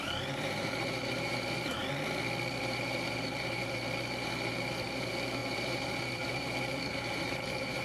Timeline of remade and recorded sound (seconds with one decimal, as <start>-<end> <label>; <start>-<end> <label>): 0.0-1.8 remade; 1.8-2.6 recorded; 2.6-7.8 remade